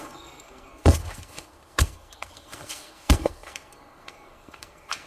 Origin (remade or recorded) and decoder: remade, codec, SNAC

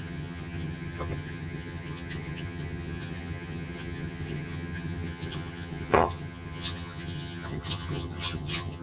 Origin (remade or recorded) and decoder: remade, vocoder, HiFi-GAN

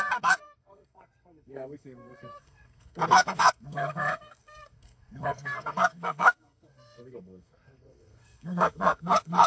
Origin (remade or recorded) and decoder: remade, codec, SNAC